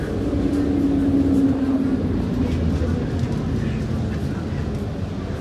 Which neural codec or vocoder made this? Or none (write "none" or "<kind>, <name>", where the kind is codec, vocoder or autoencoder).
none